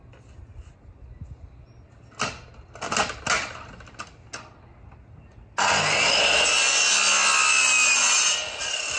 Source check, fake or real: real